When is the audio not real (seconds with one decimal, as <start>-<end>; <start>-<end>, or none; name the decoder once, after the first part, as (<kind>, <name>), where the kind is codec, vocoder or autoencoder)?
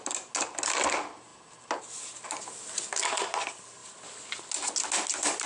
3.8-4.4 (vocoder, BigVGAN v2)